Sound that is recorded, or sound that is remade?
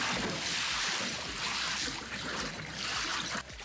recorded